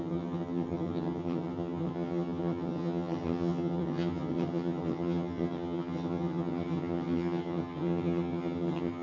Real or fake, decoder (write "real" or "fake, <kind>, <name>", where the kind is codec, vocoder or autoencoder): fake, vocoder, HiFi-GAN